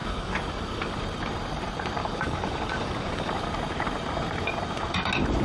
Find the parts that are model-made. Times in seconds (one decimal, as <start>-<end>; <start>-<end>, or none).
0.0-1.0; 2.0-3.4